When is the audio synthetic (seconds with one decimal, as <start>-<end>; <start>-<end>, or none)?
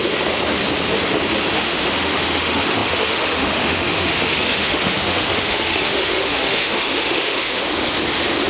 1.5-7.6